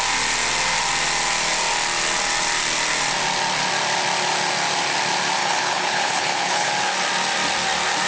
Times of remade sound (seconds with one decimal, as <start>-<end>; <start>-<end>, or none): 5.4-6.7